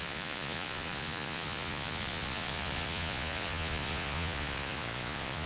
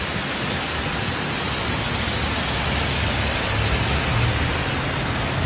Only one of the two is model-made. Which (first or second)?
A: first